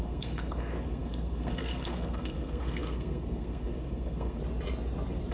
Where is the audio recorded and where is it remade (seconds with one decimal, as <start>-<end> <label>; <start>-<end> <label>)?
0.0-4.4 remade; 4.4-5.3 recorded